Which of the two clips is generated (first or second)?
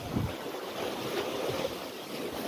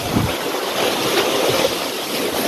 first